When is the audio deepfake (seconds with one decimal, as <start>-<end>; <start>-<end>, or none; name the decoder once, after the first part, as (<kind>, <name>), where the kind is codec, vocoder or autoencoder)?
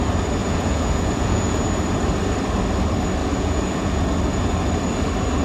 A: 0.4-1.6 (vocoder, Vocos); 3.2-4.0